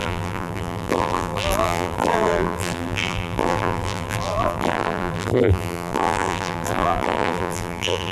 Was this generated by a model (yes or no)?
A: yes